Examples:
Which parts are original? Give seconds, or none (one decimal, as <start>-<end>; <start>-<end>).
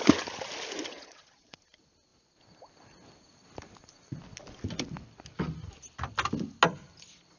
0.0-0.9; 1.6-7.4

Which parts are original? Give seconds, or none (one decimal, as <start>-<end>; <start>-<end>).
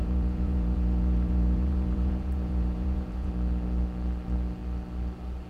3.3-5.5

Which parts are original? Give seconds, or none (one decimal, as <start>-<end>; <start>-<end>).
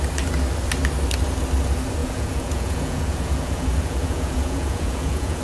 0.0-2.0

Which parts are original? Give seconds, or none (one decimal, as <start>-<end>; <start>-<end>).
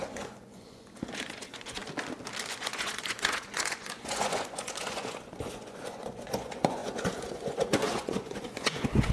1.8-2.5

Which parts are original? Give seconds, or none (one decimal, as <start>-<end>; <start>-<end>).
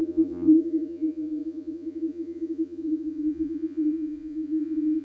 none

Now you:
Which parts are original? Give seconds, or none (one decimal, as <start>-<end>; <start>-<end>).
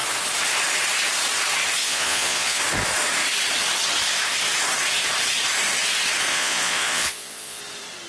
0.0-1.8; 2.6-6.3; 7.6-8.1